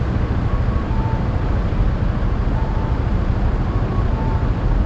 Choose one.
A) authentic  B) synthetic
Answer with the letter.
A